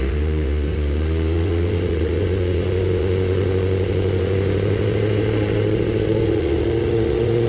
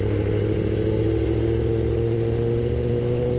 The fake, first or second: first